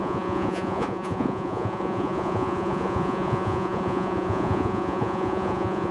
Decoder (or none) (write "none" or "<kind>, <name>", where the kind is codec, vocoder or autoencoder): vocoder, Vocos